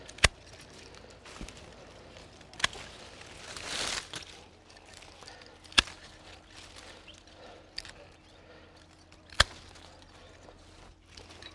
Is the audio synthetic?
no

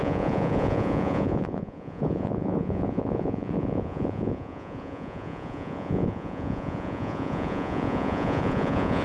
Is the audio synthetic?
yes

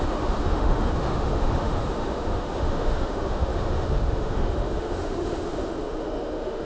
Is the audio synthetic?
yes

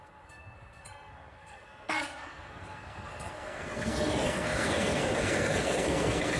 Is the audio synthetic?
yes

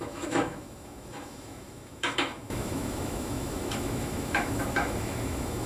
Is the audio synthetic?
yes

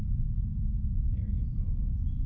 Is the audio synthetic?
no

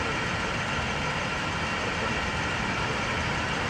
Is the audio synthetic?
yes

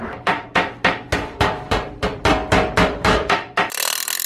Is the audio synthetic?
yes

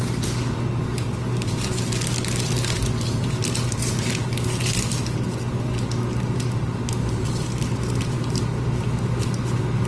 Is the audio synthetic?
no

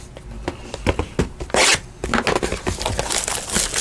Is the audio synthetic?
no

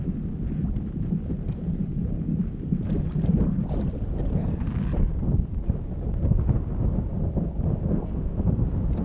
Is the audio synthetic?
no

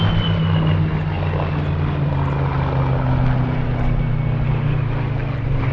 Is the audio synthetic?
no